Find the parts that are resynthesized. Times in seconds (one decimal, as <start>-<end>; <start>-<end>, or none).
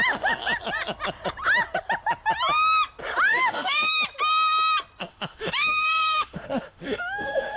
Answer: 3.3-3.9; 5.0-7.6